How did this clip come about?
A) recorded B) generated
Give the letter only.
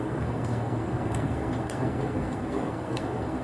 B